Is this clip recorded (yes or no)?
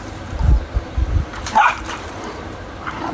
no